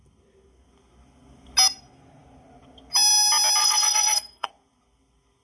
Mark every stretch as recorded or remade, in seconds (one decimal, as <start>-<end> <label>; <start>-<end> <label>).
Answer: 0.0-3.6 recorded; 3.6-4.5 remade; 4.5-5.4 recorded